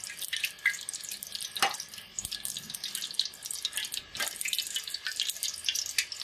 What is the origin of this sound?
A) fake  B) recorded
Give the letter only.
B